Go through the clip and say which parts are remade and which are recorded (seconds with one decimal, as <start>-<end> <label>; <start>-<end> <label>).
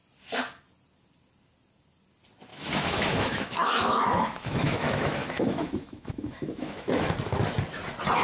0.0-2.5 recorded; 2.5-7.1 remade; 7.1-8.2 recorded